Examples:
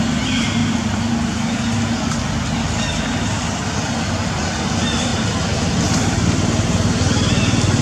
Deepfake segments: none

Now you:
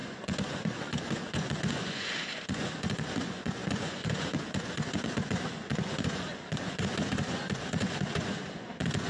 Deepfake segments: 0.0-9.1 (vocoder, Vocos)

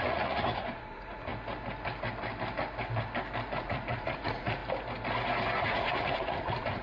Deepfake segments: 0.0-1.3 (vocoder, Vocos); 3.6-4.6; 5.6-6.8

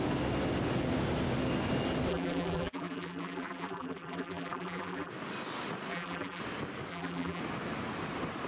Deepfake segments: 2.1-5.1 (vocoder, BigVGAN v2); 5.9-6.4; 6.9-7.4

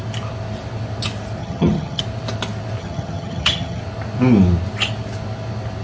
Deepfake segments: 1.4-2.0 (vocoder, HiFi-GAN); 2.8-3.8

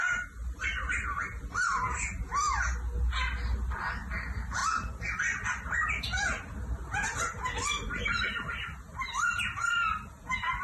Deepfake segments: none